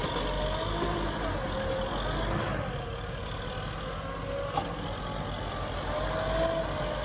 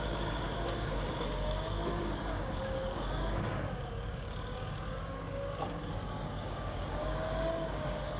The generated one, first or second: second